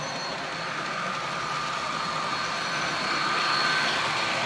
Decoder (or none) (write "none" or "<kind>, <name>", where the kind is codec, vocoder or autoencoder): none